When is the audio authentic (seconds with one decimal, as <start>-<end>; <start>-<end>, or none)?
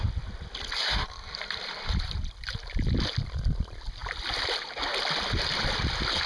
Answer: 0.0-6.3